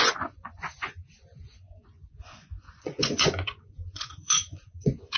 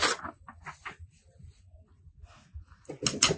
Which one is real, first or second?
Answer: second